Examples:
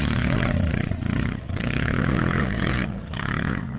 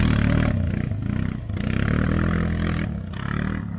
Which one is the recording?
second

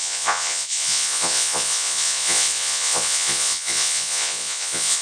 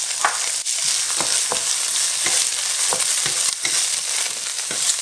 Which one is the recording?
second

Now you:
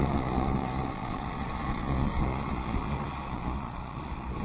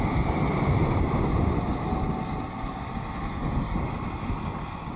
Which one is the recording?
second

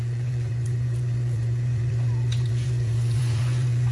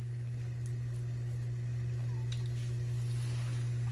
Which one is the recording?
second